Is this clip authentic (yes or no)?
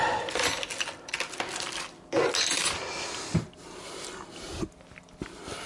yes